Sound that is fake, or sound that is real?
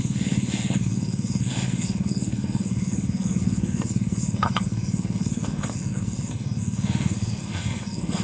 fake